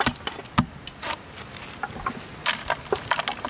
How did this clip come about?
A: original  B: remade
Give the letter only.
A